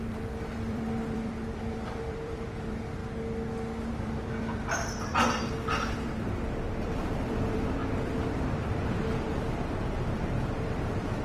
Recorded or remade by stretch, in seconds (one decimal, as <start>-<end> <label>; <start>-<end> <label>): 0.0-3.0 remade; 3.0-3.9 recorded; 3.9-7.8 remade; 7.8-9.3 recorded; 9.3-11.2 remade